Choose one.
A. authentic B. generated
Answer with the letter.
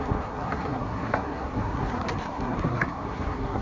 B